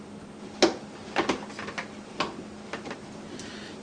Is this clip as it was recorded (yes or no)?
yes